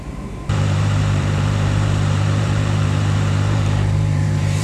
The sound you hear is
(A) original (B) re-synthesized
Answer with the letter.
B